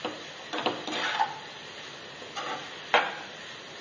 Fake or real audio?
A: real